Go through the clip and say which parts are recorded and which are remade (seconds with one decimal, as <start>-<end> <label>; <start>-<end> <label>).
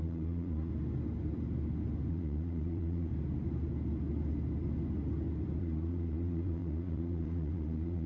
0.0-0.7 remade; 0.7-2.1 recorded; 2.1-3.1 remade; 3.1-5.6 recorded; 5.6-8.1 remade